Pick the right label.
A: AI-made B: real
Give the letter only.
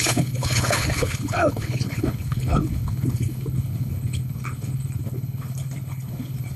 A